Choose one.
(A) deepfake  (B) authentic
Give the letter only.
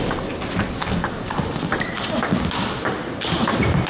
B